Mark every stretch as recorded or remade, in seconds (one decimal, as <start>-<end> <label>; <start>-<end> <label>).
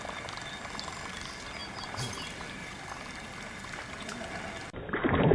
0.0-5.3 recorded